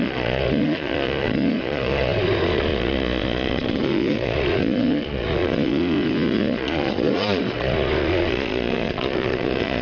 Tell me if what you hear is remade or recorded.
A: remade